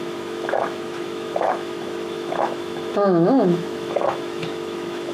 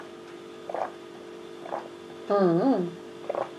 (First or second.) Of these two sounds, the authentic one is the second